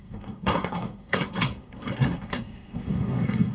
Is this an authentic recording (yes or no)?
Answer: no